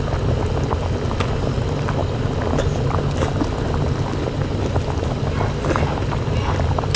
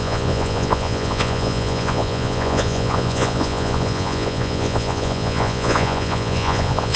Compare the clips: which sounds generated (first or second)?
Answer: second